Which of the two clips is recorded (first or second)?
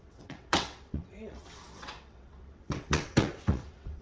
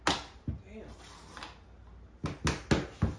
second